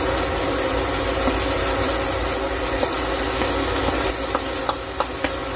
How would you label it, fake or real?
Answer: real